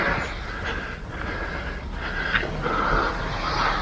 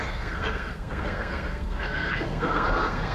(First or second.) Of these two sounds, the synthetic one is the second